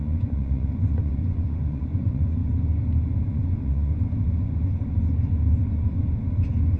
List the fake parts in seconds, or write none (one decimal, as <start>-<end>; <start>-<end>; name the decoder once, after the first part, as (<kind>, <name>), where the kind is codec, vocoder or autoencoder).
0.0-2.4 (vocoder, Vocos); 3.3-3.9